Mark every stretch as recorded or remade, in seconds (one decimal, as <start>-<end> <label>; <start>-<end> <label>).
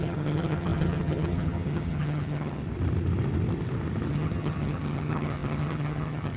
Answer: 0.0-2.6 remade; 2.6-4.1 recorded; 4.1-6.4 remade